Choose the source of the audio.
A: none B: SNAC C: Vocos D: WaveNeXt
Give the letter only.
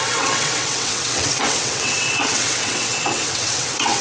D